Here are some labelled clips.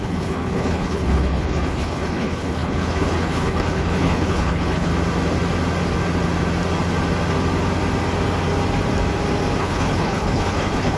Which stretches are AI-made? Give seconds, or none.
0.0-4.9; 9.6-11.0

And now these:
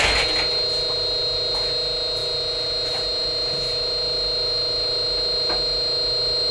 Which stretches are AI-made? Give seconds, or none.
none

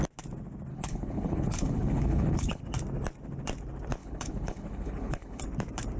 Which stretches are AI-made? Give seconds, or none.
0.7-2.6; 4.0-5.4